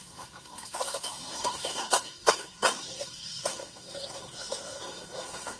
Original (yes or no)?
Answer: no